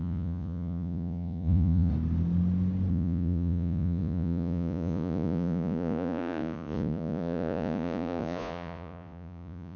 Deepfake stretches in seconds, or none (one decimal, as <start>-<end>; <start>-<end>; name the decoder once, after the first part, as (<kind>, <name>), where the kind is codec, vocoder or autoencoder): 0.0-1.9 (vocoder, Vocos); 2.9-9.8